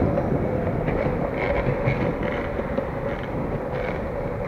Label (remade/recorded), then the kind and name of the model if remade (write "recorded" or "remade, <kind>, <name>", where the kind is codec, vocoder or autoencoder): recorded